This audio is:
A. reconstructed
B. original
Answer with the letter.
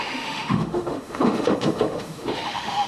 A